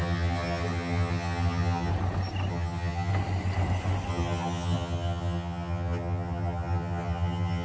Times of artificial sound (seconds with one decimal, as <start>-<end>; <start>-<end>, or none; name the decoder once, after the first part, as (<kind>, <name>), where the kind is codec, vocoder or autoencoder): 0.0-1.9 (vocoder, HiFi-GAN); 2.5-3.1; 4.1-7.6

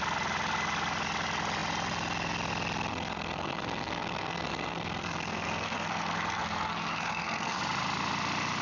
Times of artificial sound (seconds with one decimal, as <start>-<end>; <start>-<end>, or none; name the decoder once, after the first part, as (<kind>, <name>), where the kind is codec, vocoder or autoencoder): 2.9-7.6 (codec, SNAC)

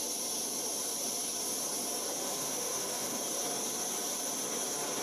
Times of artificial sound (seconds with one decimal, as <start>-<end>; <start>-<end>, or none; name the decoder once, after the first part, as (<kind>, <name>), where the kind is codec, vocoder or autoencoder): 2.2-3.2 (autoencoder, DAC-VAE)

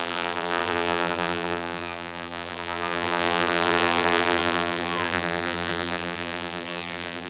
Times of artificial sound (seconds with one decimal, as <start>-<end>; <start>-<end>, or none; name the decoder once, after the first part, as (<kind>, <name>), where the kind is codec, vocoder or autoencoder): 0.0-7.3 (vocoder, BigVGAN v2)

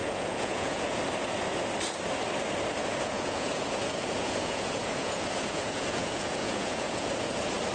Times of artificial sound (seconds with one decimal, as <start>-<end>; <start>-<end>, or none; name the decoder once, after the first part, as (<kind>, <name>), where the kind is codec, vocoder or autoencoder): 0.0-1.0 (vocoder, Vocos); 2.8-7.1

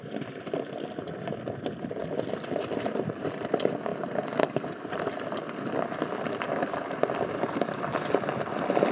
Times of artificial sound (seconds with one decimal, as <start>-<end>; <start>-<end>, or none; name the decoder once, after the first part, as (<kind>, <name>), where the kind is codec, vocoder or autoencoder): none

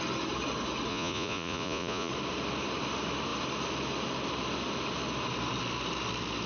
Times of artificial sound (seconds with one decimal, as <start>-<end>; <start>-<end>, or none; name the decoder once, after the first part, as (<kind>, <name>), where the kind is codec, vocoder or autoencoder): 0.9-2.1 (vocoder, Vocos)

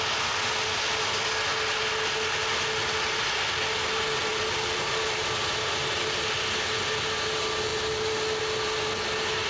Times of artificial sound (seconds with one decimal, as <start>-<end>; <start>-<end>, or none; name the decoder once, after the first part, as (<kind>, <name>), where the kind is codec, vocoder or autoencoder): none